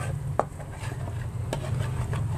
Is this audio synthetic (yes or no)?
no